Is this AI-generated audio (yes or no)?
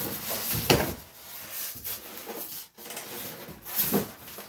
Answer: no